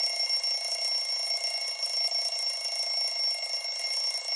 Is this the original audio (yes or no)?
yes